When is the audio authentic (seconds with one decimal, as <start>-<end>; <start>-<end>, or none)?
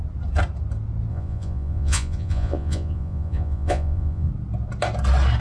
0.0-1.1; 4.3-5.4